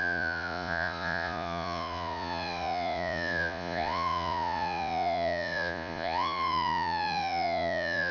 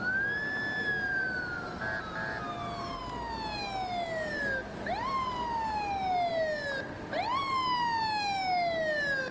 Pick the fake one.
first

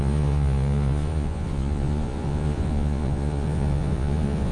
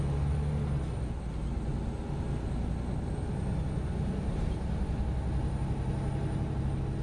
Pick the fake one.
first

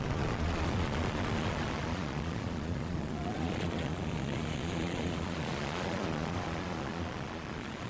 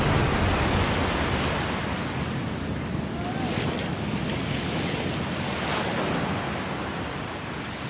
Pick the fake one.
first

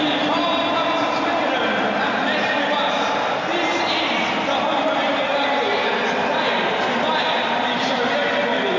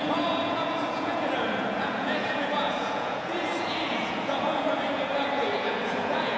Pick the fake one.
second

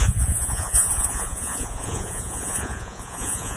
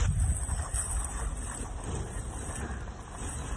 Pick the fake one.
first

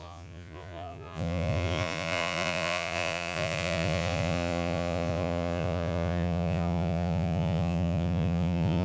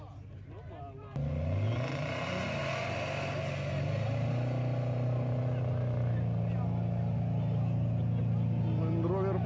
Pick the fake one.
first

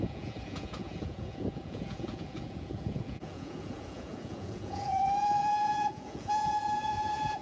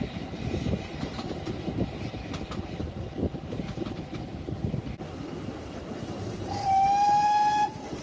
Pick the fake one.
first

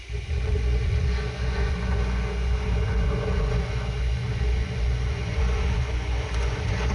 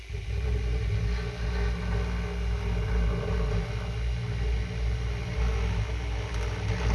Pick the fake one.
first